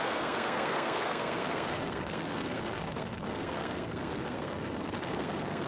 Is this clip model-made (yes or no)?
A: yes